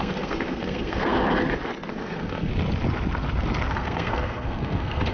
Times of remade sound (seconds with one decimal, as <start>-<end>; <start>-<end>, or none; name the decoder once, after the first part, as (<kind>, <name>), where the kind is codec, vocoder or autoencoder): 0.0-1.2 (codec, SNAC); 1.9-2.5; 3.7-5.1